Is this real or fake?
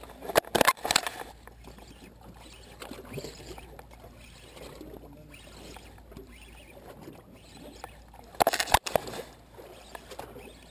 real